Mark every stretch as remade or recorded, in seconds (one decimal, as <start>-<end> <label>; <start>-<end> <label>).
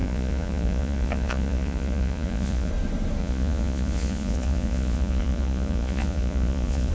0.0-2.7 remade; 2.7-3.2 recorded; 3.2-6.9 remade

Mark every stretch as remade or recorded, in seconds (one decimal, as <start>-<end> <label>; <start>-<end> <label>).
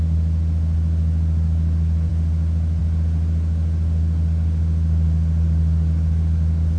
0.0-6.8 recorded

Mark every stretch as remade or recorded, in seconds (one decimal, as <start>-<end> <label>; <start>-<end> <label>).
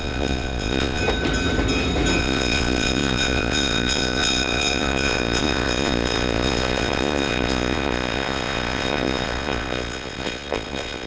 0.0-1.0 remade; 1.0-2.2 recorded; 2.2-11.1 remade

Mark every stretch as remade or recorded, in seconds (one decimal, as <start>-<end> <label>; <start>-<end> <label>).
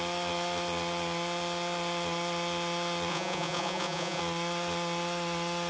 0.0-3.1 recorded; 3.1-4.2 remade; 4.2-5.7 recorded